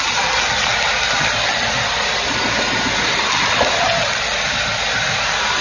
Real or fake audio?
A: real